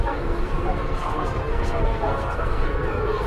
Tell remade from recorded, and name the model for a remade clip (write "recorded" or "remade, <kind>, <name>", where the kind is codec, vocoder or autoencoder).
remade, codec, SNAC